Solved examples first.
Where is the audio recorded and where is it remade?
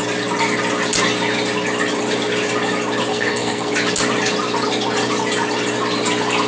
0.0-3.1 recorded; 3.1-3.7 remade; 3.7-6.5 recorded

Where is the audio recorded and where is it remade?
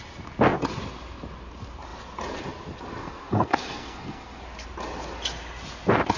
0.0-3.0 recorded; 3.0-4.4 remade; 4.4-6.2 recorded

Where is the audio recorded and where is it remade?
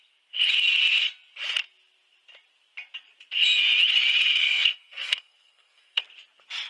0.0-4.3 recorded; 4.3-6.0 remade; 6.0-6.7 recorded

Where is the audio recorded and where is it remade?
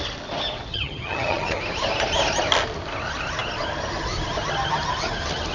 0.0-0.7 recorded; 0.7-1.6 remade; 1.6-5.5 recorded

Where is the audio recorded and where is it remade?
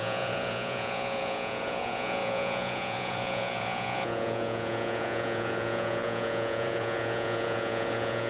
0.0-8.3 remade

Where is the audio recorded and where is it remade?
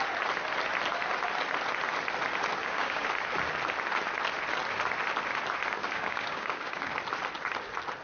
0.0-2.6 recorded; 2.6-3.1 remade; 3.1-5.8 recorded; 5.8-6.9 remade; 6.9-8.0 recorded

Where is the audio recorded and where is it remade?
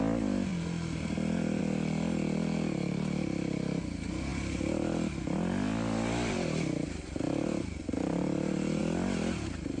0.0-9.8 recorded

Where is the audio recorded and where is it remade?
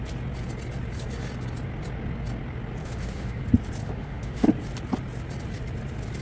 0.0-2.8 recorded; 2.8-3.4 remade; 3.4-3.8 recorded; 3.8-4.5 remade; 4.5-6.2 recorded